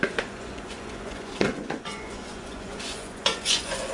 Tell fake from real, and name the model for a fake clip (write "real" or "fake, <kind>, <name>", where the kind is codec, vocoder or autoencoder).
fake, vocoder, Vocos